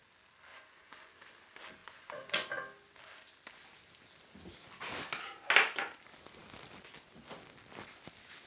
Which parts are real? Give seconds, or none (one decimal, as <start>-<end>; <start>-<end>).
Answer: 0.0-0.5; 1.1-1.8; 2.5-8.5